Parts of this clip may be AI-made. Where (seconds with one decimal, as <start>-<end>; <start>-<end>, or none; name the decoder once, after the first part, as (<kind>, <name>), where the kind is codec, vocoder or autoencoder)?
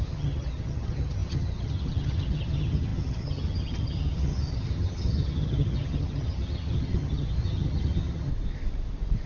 0.0-8.3 (vocoder, HiFi-GAN)